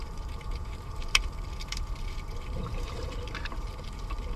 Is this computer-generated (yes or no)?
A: yes